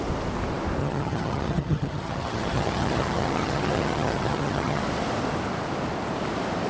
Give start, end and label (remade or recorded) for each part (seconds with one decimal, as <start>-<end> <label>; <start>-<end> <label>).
0.0-0.8 recorded; 0.8-4.8 remade; 4.8-6.7 recorded